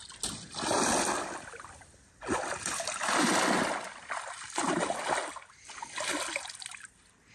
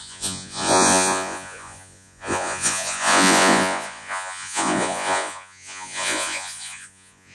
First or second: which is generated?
second